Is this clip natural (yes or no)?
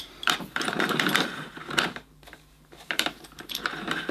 no